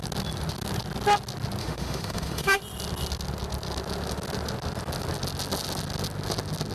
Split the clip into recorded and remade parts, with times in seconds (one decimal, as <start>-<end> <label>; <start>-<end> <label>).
0.0-1.6 recorded; 1.6-2.6 remade; 2.6-6.7 recorded